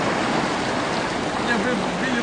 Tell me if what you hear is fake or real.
real